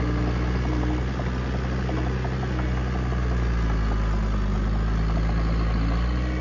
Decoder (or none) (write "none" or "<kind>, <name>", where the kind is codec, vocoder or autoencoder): none